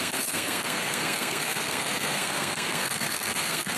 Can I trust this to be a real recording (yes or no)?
no